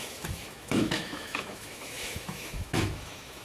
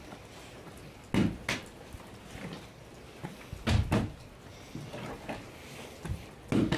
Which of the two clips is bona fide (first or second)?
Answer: second